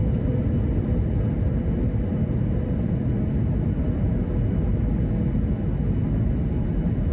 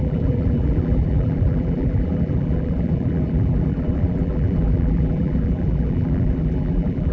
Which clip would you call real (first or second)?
first